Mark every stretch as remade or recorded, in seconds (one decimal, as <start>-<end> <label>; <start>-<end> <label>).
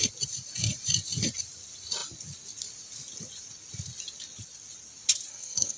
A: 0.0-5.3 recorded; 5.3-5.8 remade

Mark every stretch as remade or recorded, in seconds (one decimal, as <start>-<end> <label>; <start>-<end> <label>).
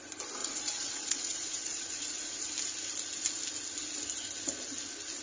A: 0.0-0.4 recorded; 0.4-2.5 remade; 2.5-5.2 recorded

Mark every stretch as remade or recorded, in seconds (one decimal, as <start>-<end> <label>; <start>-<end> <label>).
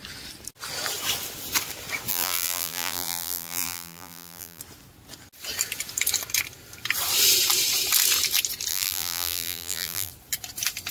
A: 0.0-2.1 recorded; 2.1-4.6 remade; 4.6-8.7 recorded; 8.7-10.1 remade; 10.1-10.9 recorded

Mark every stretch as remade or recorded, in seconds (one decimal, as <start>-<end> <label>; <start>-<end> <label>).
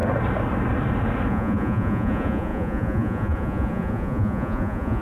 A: 0.0-1.3 recorded; 1.3-5.0 remade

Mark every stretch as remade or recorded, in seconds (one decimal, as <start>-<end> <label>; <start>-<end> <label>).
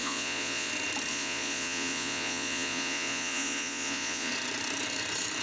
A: 0.0-0.7 remade; 0.7-1.1 recorded; 1.1-4.3 remade; 4.3-5.4 recorded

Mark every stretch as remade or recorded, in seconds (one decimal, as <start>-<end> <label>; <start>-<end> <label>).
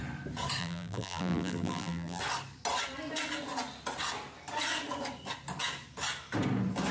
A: 0.0-0.6 recorded; 0.6-2.2 remade; 2.2-6.9 recorded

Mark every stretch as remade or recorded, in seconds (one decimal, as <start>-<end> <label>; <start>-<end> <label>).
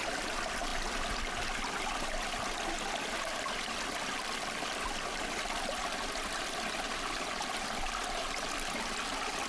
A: 0.0-9.5 recorded